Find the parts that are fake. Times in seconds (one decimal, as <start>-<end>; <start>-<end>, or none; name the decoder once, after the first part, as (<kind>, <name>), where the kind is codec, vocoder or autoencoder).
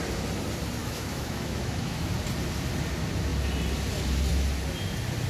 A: 0.8-2.1 (autoencoder, DAC-VAE)